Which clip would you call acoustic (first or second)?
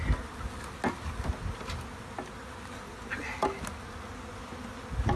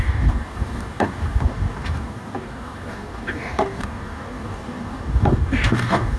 first